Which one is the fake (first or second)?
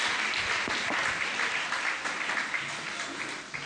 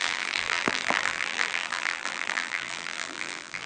second